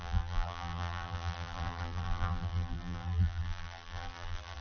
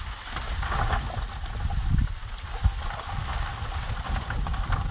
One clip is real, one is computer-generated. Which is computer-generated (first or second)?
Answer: first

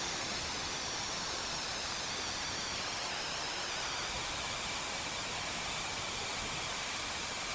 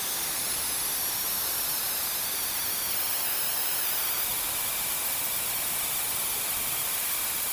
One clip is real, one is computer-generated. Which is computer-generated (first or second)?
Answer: first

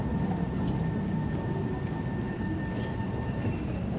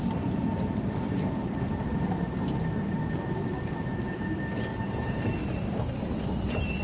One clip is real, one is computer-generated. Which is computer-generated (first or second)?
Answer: second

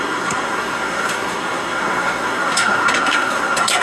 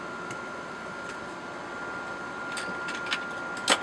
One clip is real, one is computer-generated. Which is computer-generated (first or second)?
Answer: first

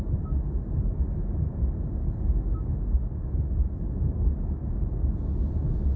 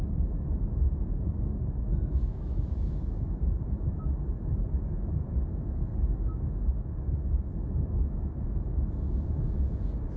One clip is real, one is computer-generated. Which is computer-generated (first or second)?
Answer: second